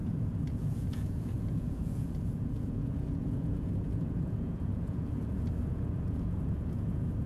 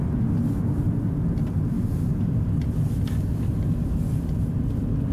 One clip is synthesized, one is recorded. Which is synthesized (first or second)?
first